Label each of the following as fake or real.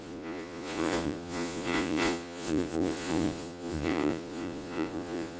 fake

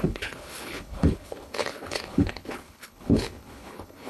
fake